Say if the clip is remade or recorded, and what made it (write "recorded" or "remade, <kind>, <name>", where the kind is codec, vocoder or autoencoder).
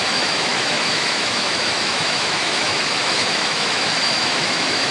remade, autoencoder, DAC-VAE